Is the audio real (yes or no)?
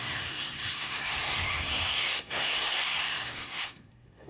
no